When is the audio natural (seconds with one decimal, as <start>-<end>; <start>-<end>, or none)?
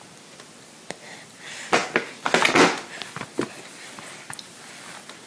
0.0-5.3